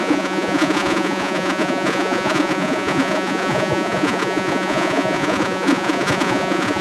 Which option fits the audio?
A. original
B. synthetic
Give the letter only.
B